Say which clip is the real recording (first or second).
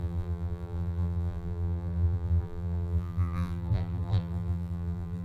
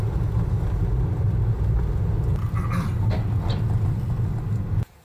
second